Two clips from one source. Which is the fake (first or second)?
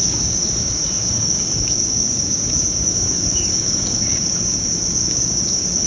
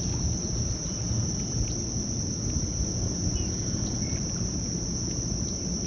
first